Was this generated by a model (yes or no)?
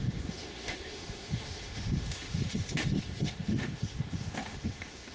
yes